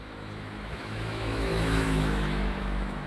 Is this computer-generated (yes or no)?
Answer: yes